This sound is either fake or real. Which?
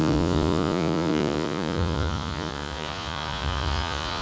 fake